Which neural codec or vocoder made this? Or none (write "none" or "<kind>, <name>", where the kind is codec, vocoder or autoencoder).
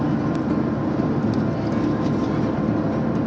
none